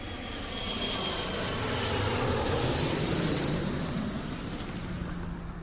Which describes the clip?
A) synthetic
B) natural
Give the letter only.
B